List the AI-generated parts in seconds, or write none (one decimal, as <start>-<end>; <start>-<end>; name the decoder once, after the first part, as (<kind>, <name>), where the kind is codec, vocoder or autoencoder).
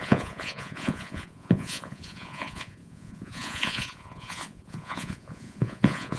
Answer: 0.0-6.2 (vocoder, Vocos)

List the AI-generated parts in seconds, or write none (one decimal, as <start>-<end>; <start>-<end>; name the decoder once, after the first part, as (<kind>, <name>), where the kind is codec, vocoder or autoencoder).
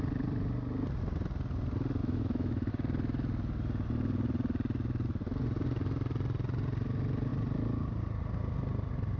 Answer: 2.0-2.7 (autoencoder, DAC-VAE)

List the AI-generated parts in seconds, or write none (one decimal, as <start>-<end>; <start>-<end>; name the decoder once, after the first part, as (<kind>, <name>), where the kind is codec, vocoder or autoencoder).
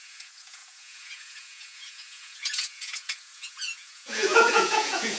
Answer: 0.0-5.2 (vocoder, Vocos)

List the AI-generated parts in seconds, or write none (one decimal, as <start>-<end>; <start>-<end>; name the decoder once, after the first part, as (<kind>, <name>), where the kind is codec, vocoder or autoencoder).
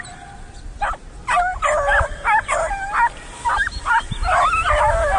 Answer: none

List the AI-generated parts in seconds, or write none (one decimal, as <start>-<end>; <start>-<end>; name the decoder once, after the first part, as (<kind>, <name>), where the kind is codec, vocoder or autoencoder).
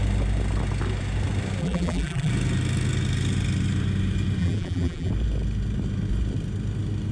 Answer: 1.6-2.3 (vocoder, BigVGAN v2); 4.4-5.1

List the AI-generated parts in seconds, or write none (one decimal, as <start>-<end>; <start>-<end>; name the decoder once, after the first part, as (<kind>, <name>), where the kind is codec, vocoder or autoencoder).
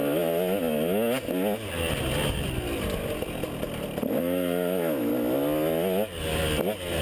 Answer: 4.2-5.1 (autoencoder, DAC-VAE)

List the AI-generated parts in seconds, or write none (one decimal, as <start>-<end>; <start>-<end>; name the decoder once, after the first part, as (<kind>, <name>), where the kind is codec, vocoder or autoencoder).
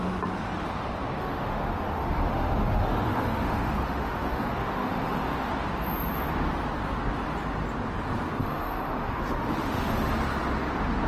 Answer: 1.2-5.5 (autoencoder, DAC-VAE); 8.4-10.1